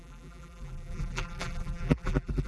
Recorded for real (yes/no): no